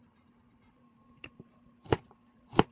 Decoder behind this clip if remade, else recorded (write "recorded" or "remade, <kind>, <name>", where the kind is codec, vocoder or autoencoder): recorded